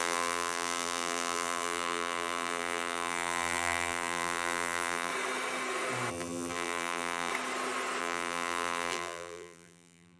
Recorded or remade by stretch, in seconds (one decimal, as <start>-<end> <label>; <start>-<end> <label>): 0.0-5.1 remade; 5.1-6.1 recorded; 6.1-7.3 remade; 7.3-8.0 recorded; 8.0-10.2 remade